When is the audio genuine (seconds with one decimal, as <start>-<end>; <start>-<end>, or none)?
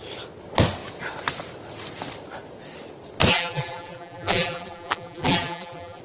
0.0-3.3